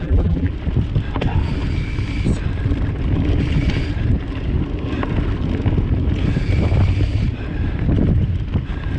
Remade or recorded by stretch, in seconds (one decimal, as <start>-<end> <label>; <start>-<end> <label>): 0.0-0.5 remade; 0.5-9.0 recorded